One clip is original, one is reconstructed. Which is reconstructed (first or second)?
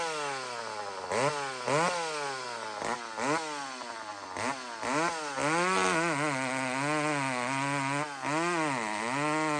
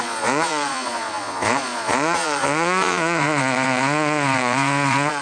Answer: second